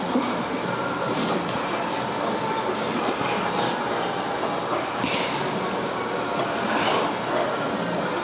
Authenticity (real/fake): real